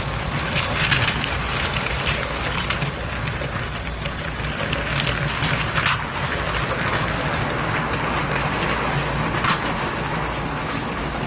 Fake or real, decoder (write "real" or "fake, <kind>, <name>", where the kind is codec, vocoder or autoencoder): real